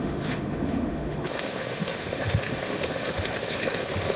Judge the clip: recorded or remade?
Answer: remade